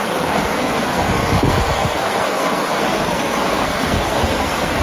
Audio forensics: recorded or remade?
remade